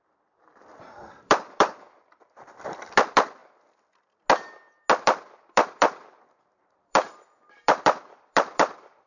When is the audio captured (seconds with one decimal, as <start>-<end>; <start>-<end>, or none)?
3.4-5.0